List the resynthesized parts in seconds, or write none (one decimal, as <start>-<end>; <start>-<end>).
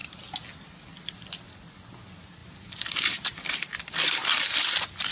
none